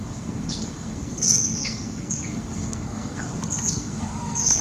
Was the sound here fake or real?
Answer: fake